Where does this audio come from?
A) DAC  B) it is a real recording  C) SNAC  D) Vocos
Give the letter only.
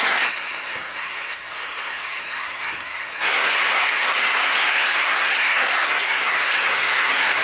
C